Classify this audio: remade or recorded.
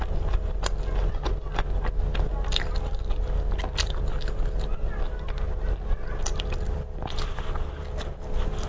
recorded